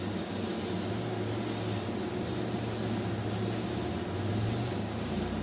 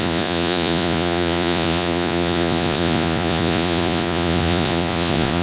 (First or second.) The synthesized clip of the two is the second